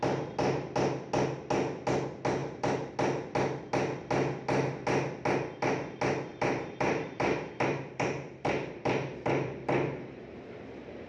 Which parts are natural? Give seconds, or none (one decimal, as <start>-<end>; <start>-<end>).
0.0-2.4; 2.9-6.3; 10.4-11.1